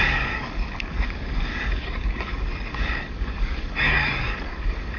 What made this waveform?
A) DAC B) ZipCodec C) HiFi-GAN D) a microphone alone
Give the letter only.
A